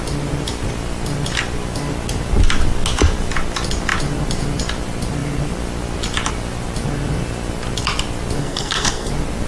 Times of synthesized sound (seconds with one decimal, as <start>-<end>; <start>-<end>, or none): 8.4-9.1